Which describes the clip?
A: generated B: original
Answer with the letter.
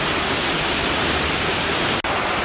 B